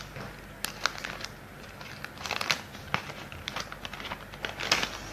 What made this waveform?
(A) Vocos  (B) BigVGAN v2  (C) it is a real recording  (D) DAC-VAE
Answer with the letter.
C